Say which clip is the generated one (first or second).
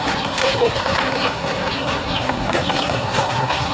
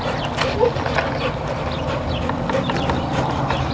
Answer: first